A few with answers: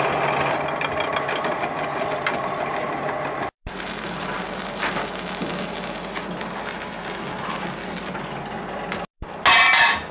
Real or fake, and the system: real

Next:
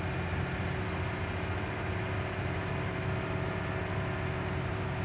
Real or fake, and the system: real